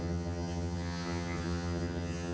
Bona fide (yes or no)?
no